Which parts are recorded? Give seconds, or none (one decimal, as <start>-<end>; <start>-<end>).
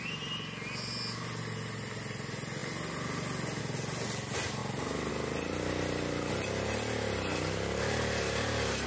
0.0-8.9